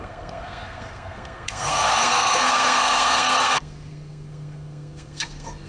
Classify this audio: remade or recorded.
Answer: remade